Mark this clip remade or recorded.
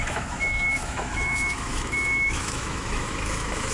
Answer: remade